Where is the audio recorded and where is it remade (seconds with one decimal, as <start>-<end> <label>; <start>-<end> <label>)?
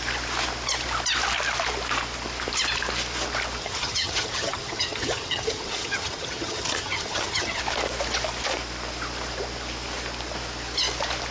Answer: 0.0-3.6 recorded; 3.6-7.6 remade; 7.6-11.3 recorded